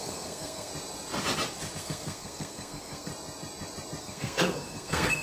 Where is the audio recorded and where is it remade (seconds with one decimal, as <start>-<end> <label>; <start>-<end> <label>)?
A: 0.0-0.7 remade; 0.7-1.8 recorded; 1.8-3.1 remade; 3.1-4.0 recorded; 4.0-5.2 remade